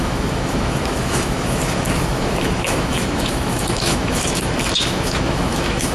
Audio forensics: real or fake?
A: fake